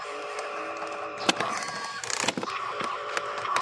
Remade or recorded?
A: recorded